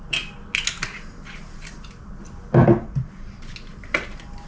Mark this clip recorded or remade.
recorded